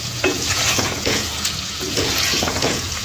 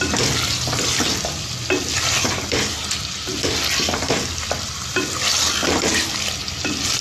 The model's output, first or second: first